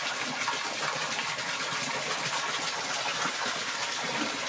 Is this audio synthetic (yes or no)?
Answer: no